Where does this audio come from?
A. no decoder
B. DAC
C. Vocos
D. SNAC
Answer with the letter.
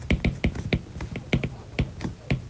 A